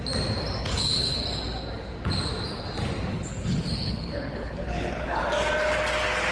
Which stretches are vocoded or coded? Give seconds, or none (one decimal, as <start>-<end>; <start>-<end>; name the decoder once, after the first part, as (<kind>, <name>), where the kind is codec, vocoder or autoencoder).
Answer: 0.6-1.2 (codec, HILCodec); 3.1-5.2